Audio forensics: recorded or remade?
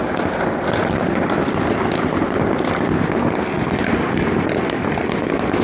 recorded